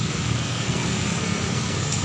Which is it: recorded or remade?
remade